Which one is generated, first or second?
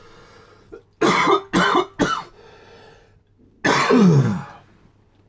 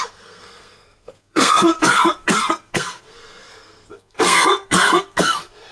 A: second